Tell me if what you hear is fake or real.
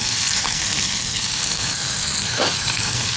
fake